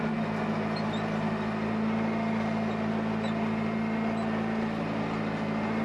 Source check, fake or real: real